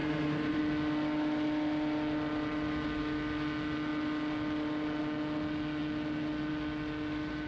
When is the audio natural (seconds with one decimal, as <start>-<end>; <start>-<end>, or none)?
0.6-7.5